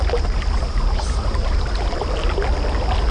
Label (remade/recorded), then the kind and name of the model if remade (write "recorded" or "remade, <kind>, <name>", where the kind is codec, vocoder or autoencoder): recorded